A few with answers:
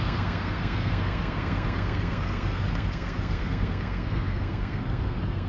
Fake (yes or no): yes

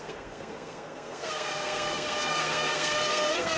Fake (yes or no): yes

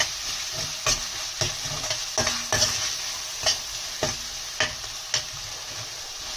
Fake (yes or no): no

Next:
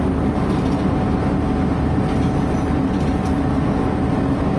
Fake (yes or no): no